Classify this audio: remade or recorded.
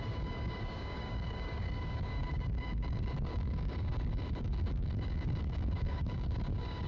remade